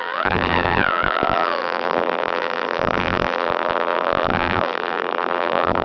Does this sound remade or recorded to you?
remade